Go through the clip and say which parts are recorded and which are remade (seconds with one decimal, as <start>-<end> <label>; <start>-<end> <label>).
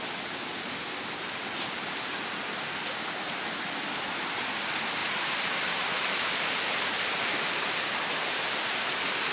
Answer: 0.0-5.0 recorded; 5.0-6.6 remade; 6.6-9.3 recorded